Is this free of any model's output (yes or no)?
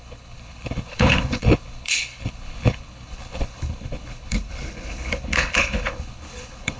no